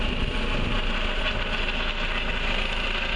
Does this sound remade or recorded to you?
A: recorded